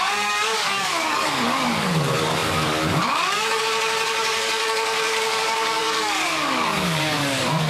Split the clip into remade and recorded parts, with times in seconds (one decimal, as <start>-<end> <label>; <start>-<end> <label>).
0.0-7.7 remade